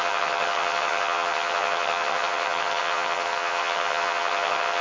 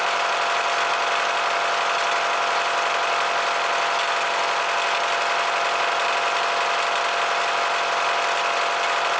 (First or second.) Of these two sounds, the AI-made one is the first